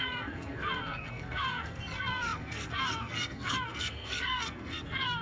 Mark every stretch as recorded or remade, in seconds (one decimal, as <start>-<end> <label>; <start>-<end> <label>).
0.0-5.2 remade